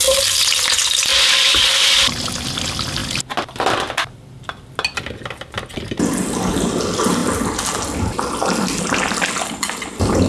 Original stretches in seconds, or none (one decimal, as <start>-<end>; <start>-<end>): 0.0-10.3